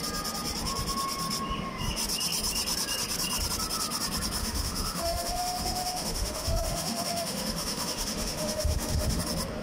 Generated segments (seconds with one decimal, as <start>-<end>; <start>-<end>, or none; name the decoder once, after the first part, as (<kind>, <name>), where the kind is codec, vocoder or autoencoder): 4.4-9.2 (autoencoder, DAC-VAE)